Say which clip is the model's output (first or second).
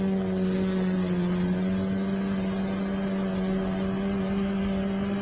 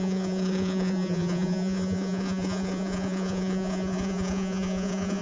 second